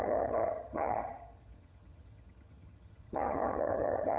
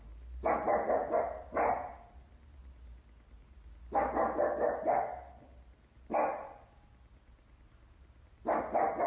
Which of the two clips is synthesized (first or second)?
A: first